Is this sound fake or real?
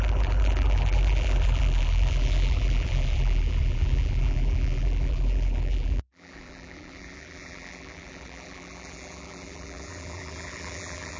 fake